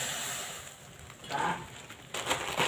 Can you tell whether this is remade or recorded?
recorded